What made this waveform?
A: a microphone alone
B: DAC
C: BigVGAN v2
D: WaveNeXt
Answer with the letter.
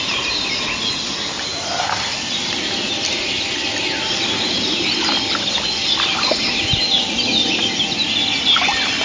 A